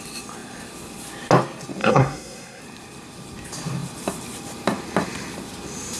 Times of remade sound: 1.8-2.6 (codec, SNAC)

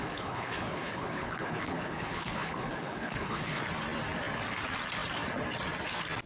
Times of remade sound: 0.0-3.6 (codec, HILCodec)

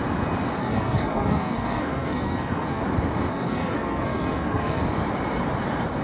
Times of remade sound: 0.6-2.8 (codec, SNAC); 3.3-4.8

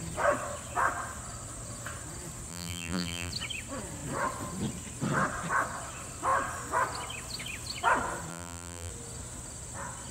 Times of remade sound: 2.5-3.3 (vocoder, BigVGAN v2); 8.3-8.9

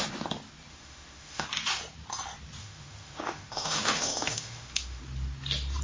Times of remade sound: 0.7-1.5 (autoencoder, DAC-VAE); 2.6-5.0

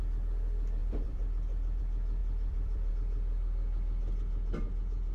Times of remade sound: 0.8-1.8 (vocoder, BigVGAN v2); 2.2-2.9